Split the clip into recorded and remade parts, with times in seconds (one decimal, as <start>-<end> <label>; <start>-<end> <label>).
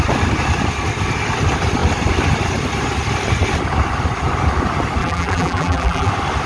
0.0-5.0 recorded; 5.0-6.1 remade; 6.1-6.5 recorded